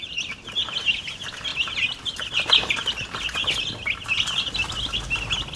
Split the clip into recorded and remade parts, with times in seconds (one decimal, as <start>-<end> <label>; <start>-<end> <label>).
0.0-5.6 recorded